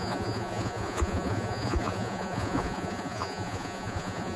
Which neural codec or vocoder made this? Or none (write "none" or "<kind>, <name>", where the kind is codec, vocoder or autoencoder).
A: vocoder, Vocos